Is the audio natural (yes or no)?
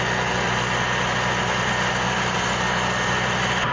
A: yes